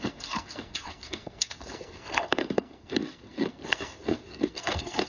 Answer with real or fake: fake